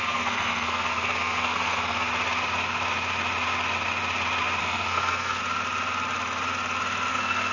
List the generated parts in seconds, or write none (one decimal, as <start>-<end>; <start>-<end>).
0.0-2.1; 4.6-5.4; 7.1-7.5